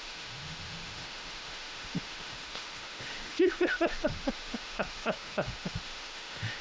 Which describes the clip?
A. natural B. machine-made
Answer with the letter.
B